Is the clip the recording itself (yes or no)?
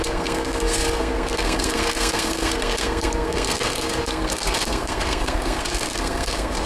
no